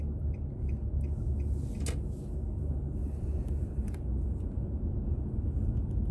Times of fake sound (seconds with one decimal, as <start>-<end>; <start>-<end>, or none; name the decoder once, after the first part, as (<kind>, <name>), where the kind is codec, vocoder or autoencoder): 3.0-5.3 (vocoder, BigVGAN v2)